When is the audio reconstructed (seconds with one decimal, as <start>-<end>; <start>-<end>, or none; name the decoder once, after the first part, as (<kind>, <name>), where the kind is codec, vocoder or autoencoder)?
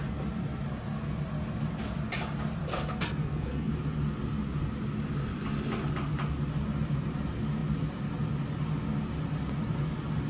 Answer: 2.7-3.7 (codec, SNAC)